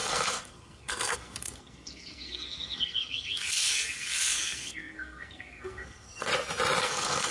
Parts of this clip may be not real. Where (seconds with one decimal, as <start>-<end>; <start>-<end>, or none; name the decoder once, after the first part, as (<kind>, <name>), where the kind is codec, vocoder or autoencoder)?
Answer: 0.0-6.3 (codec, SNAC); 6.8-7.3